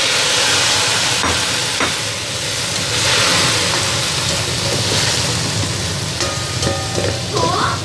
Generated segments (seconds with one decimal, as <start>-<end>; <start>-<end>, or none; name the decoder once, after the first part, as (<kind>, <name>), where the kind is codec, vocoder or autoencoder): none